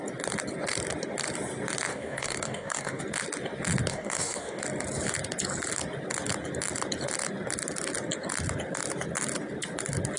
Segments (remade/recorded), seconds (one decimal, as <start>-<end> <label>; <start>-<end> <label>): 0.0-1.9 recorded; 1.9-3.0 remade; 3.0-3.9 recorded; 3.9-4.6 remade; 4.6-10.2 recorded